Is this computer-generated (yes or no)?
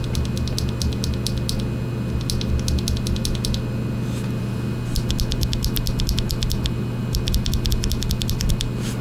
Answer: no